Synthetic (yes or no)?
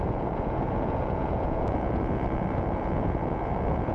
yes